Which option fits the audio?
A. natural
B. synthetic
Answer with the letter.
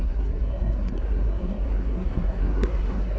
B